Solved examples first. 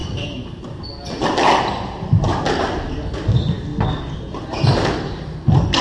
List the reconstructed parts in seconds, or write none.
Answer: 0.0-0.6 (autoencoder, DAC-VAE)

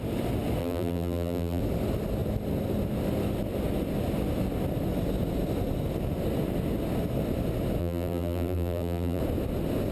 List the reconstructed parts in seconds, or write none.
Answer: 0.6-1.6 (vocoder, BigVGAN v2); 7.8-9.2